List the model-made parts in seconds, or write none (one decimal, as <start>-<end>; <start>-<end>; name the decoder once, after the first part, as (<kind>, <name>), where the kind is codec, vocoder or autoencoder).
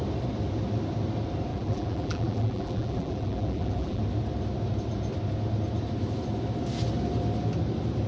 1.5-4.0 (vocoder, BigVGAN v2)